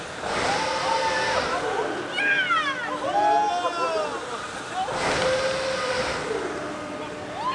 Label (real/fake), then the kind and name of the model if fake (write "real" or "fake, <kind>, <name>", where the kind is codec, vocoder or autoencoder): real